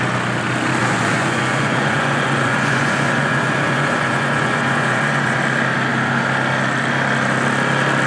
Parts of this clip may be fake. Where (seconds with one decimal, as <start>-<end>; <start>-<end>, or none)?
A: 0.8-5.4